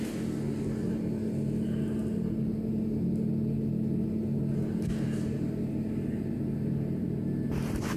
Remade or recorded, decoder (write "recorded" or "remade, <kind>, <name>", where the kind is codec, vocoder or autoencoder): recorded